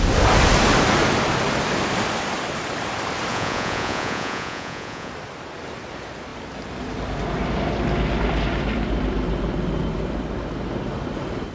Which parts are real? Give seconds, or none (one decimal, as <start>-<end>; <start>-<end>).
0.0-3.3; 5.1-11.5